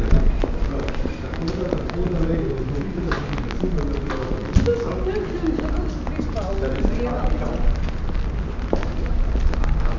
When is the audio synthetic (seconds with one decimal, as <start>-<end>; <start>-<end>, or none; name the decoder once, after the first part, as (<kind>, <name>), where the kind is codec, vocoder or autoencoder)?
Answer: none